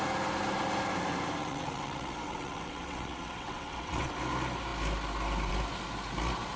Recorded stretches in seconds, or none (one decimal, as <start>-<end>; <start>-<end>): 0.0-1.4; 4.1-6.6